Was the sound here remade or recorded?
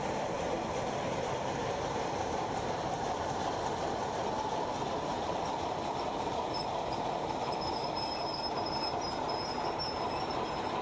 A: remade